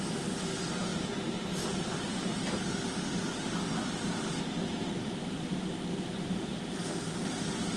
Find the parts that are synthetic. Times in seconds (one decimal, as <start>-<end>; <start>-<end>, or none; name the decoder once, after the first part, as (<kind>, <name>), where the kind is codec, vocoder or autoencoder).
0.9-2.2 (vocoder, BigVGAN v2); 5.0-6.6